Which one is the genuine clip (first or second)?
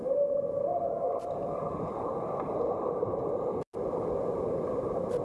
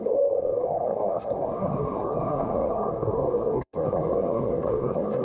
first